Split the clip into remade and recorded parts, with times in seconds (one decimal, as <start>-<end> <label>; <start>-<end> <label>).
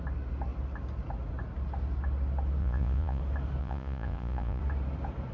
0.0-2.6 recorded; 2.6-3.2 remade; 3.2-3.6 recorded; 3.6-4.6 remade; 4.6-5.3 recorded